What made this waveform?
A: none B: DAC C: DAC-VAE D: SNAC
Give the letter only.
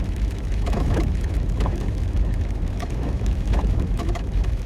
C